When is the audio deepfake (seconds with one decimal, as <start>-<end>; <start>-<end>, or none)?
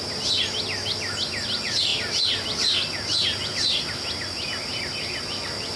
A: none